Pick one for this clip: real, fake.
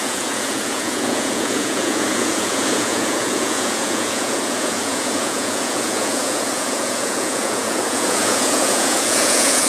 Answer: fake